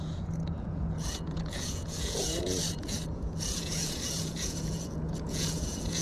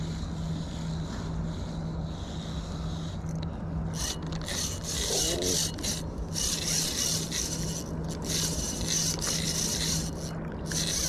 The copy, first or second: first